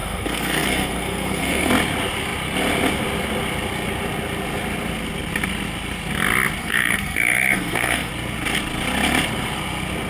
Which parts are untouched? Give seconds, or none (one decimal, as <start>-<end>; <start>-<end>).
1.7-6.6; 8.1-10.1